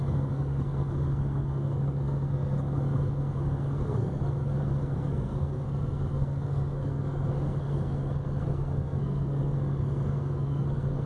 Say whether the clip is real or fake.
fake